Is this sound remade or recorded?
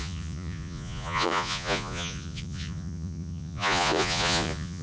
remade